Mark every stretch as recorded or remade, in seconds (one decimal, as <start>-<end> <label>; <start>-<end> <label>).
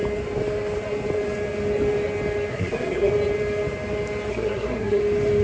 0.0-2.5 recorded; 2.5-3.1 remade; 3.1-4.3 recorded; 4.3-5.0 remade; 5.0-5.4 recorded